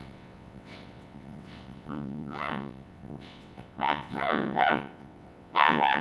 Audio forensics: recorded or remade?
remade